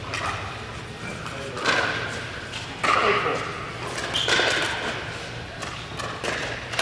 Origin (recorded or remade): recorded